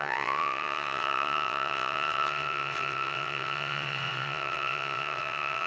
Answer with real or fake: fake